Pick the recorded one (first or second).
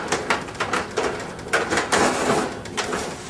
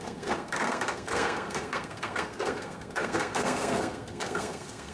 first